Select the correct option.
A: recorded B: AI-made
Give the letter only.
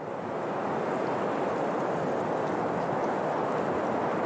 A